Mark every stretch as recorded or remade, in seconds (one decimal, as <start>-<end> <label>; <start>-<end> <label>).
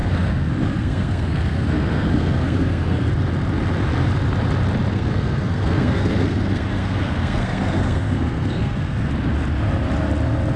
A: 0.0-3.1 remade; 3.1-4.9 recorded; 4.9-9.1 remade; 9.1-10.6 recorded